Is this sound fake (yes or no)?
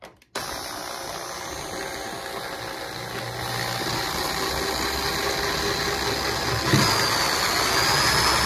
no